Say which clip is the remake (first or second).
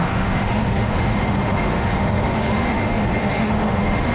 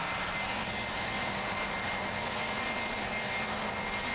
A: first